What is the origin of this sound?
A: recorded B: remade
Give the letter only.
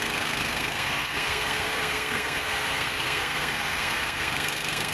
B